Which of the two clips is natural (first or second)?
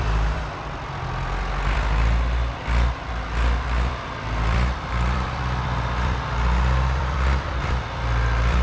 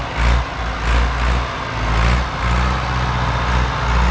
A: second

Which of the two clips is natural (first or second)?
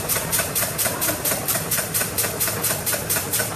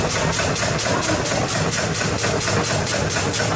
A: second